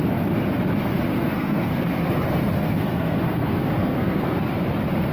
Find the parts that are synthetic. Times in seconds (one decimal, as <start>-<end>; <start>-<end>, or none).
1.1-2.1; 2.6-4.5